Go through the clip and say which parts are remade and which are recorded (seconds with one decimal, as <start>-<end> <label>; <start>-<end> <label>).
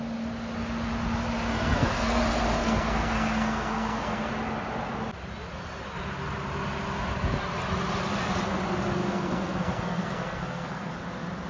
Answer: 0.0-1.5 recorded; 1.5-2.2 remade; 2.2-2.6 recorded; 2.6-4.3 remade; 4.3-9.0 recorded; 9.0-10.9 remade; 10.9-11.5 recorded